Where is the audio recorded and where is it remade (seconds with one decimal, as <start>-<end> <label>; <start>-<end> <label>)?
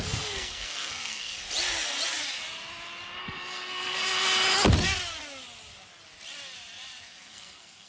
0.0-1.4 remade; 1.4-3.2 recorded; 3.2-4.0 remade; 4.0-7.0 recorded; 7.0-7.9 remade